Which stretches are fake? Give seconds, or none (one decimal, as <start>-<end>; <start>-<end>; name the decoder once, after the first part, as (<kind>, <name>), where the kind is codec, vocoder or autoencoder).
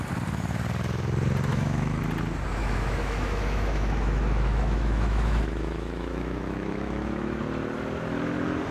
1.5-2.0 (autoencoder, DAC-VAE); 2.6-7.4